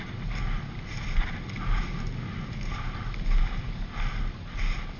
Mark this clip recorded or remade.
recorded